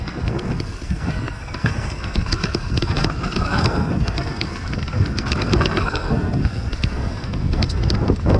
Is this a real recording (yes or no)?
no